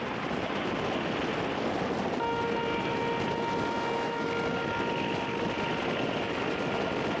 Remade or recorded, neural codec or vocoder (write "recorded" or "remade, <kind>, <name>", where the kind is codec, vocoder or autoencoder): recorded